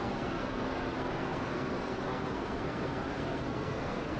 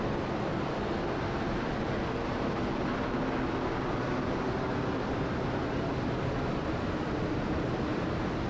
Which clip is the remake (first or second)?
first